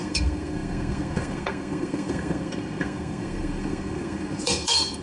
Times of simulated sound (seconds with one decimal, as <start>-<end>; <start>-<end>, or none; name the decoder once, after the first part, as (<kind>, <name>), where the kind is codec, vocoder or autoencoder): 0.0-5.0 (codec, SNAC)